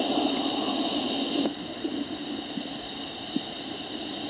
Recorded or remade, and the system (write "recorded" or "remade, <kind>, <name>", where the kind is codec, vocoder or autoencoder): recorded